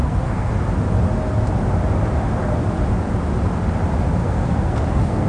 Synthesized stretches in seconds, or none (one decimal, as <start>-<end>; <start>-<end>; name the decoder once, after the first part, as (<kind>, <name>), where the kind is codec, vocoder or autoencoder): 0.0-0.5 (codec, SNAC); 4.2-5.3